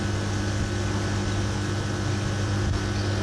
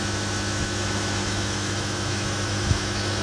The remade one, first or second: second